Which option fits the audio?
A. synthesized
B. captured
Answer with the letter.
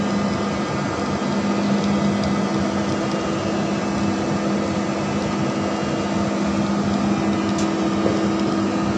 B